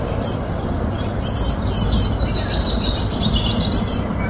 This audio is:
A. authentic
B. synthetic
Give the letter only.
B